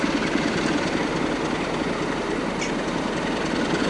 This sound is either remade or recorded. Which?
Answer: recorded